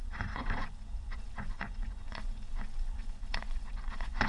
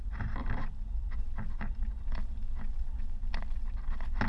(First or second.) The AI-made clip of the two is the first